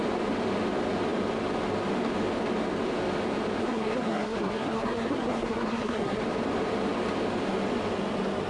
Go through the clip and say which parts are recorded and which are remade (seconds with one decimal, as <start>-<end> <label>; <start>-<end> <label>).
0.0-3.6 recorded; 3.6-6.2 remade; 6.2-8.5 recorded